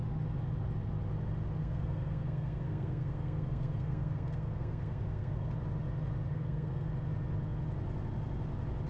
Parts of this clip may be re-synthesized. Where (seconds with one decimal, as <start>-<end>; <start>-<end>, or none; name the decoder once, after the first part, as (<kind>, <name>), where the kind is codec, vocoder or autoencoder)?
1.6-5.5 (codec, SNAC); 6.3-6.9